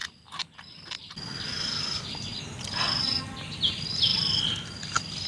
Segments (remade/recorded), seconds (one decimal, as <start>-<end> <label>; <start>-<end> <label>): 0.0-5.3 recorded